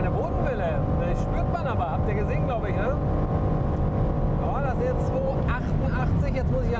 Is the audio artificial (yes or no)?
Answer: no